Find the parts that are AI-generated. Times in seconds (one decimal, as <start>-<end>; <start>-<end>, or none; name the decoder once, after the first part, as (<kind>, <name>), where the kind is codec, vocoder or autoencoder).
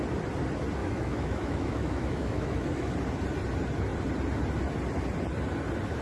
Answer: 0.8-2.9 (autoencoder, DAC-VAE)